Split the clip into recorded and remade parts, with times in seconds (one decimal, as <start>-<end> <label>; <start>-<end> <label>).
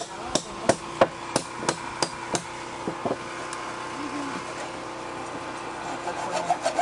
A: 0.0-6.8 recorded